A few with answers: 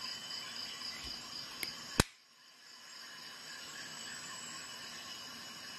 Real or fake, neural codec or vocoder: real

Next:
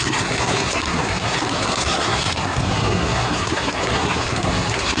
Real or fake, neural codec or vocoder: fake, codec, SNAC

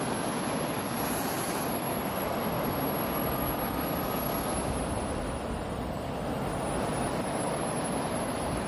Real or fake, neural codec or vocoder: real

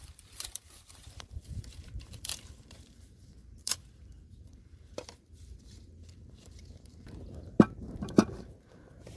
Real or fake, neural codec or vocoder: fake, vocoder, BigVGAN v2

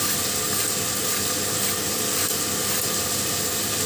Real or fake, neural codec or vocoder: real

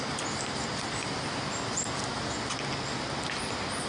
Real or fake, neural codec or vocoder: real